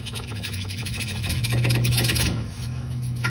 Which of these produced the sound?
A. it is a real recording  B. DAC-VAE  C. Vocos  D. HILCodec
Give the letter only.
B